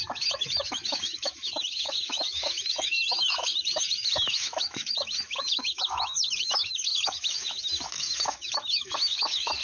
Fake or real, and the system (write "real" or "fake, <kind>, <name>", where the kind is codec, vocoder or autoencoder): fake, autoencoder, DAC-VAE